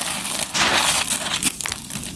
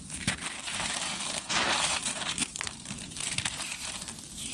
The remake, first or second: second